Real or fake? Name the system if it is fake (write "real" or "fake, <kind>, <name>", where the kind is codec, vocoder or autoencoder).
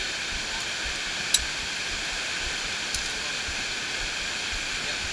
real